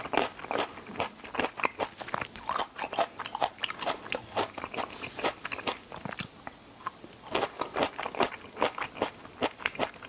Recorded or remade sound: recorded